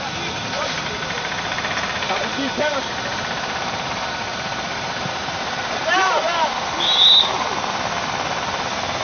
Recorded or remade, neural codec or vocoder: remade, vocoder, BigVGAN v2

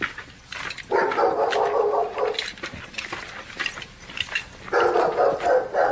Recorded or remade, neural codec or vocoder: recorded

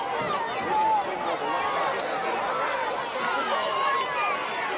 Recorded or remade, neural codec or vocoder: recorded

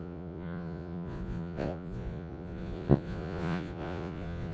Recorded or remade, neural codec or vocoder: remade, vocoder, Vocos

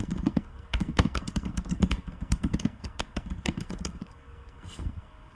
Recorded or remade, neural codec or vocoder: remade, codec, SNAC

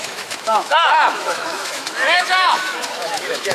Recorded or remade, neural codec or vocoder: remade, autoencoder, DAC-VAE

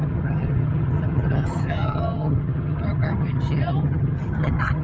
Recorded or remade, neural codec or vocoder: remade, vocoder, HiFi-GAN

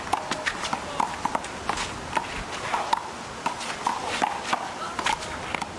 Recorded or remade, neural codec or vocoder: recorded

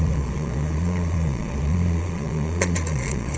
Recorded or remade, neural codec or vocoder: remade, vocoder, Vocos